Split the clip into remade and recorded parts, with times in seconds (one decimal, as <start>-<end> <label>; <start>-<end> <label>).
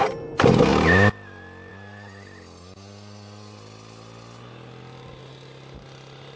0.0-6.4 recorded